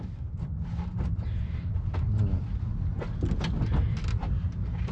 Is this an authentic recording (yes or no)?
yes